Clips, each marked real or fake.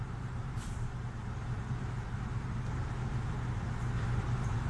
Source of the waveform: fake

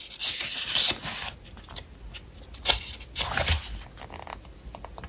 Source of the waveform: real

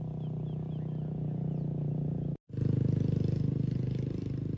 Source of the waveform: real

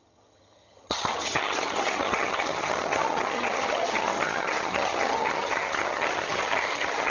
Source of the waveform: fake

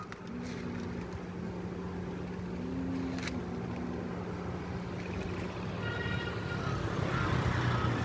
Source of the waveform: real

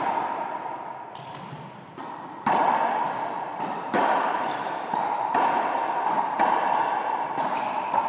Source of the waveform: fake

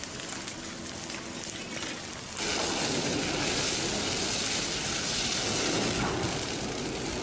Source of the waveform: real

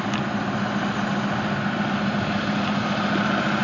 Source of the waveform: real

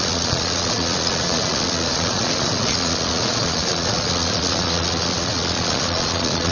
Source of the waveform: fake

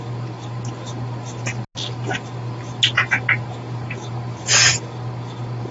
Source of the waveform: real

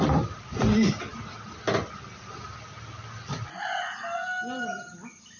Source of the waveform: real